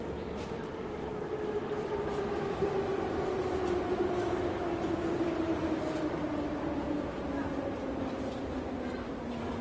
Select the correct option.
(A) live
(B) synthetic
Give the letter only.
A